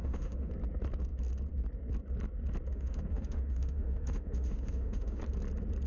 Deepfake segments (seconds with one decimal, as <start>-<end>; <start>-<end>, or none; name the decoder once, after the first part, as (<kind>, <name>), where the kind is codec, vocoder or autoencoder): 0.0-0.5 (autoencoder, DAC-VAE); 2.7-5.2